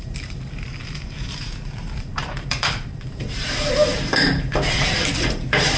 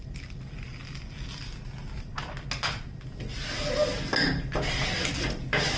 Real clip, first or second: second